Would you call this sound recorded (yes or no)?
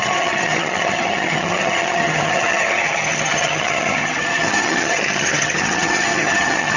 no